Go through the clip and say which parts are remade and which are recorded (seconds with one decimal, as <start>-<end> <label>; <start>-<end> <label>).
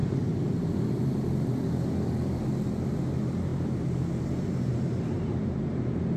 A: 0.0-2.8 recorded; 2.8-6.2 remade